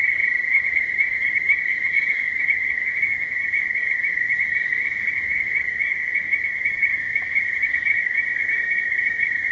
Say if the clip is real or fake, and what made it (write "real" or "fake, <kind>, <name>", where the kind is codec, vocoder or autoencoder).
fake, codec, DAC